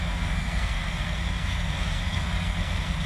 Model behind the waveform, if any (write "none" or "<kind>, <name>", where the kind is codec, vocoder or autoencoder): codec, SNAC